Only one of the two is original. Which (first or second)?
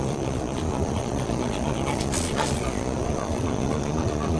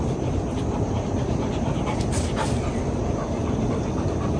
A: second